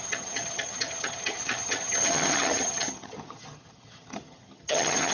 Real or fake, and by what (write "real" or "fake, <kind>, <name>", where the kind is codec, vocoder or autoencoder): fake, vocoder, HiFi-GAN